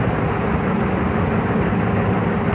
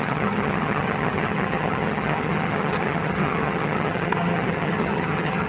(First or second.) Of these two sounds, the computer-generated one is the second